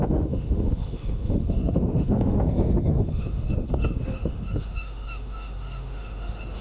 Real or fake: fake